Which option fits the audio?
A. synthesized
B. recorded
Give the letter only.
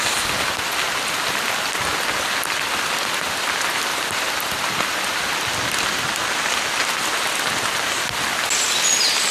B